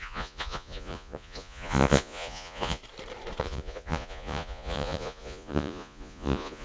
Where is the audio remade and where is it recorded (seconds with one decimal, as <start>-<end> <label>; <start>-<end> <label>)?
0.0-2.8 remade; 2.8-3.4 recorded; 3.4-6.6 remade